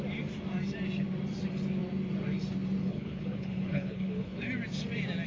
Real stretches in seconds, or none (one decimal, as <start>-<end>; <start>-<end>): 0.0-2.8; 4.4-5.3